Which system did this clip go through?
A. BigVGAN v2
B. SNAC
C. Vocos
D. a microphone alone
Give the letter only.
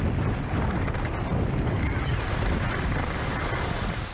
D